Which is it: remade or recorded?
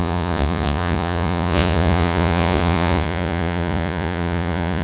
remade